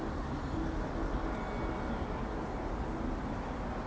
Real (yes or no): yes